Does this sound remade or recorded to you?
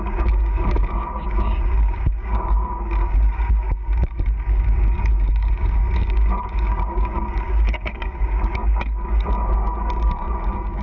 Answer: remade